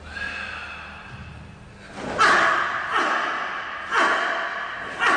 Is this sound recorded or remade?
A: recorded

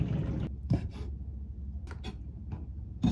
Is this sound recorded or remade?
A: recorded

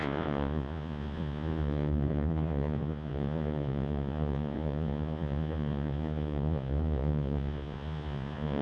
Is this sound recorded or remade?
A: remade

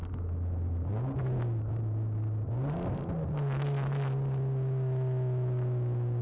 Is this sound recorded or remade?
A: recorded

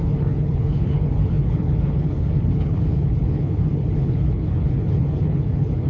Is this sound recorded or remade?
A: remade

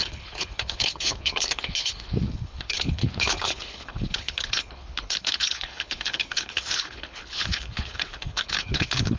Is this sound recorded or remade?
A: remade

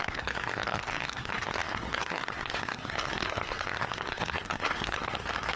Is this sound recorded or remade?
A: remade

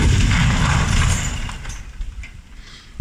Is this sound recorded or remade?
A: recorded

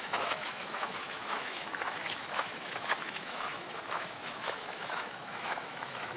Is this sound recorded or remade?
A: remade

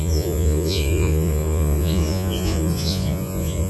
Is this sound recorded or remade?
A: remade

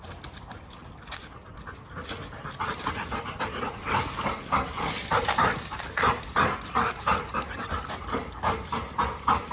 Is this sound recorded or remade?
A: recorded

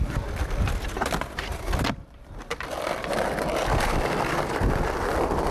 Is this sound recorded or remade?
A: remade